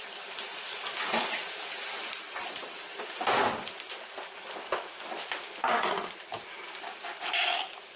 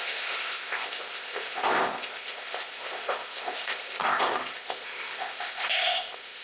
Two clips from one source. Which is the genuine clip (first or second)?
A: first